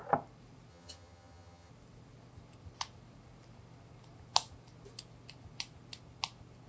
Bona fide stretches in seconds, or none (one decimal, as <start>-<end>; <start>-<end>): 0.0-0.7; 1.7-6.7